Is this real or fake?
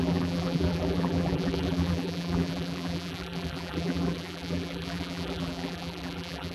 fake